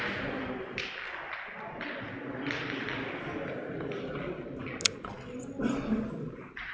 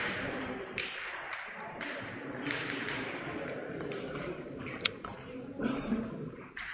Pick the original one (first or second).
first